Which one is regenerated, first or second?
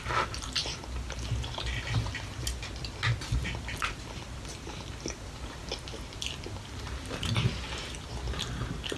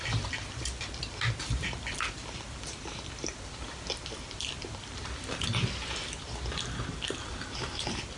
second